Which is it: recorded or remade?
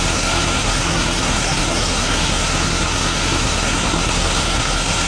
remade